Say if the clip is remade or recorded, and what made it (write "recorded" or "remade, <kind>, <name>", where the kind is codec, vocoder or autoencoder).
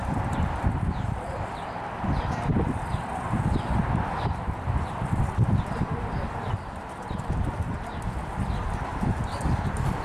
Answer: remade, vocoder, BigVGAN v2